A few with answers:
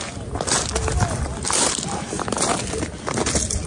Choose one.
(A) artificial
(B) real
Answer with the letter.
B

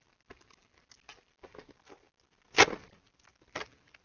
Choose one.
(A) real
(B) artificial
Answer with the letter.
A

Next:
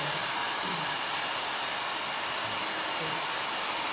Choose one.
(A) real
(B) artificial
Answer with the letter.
B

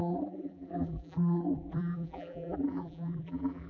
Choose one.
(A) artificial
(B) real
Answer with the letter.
A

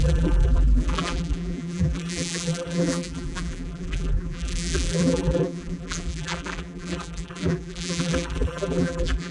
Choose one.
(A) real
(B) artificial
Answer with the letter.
B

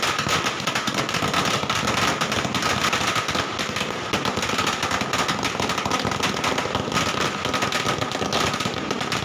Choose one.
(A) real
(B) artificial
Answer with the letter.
A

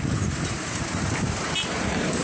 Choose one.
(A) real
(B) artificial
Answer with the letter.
B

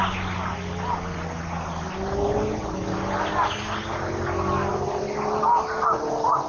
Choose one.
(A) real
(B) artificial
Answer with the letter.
A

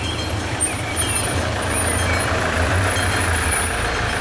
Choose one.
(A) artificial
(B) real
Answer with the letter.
A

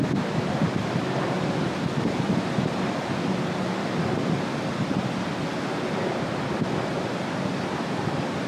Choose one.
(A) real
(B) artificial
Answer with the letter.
A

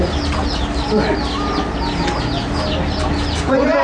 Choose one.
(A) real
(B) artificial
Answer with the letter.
A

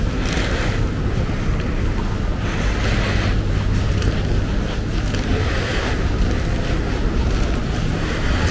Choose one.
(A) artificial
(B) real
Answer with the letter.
B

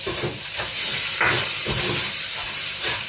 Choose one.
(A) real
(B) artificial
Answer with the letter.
B